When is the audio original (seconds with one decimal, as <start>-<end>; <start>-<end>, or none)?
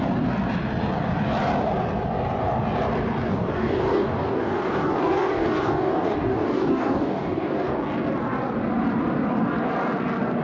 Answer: 0.0-3.3; 7.8-10.4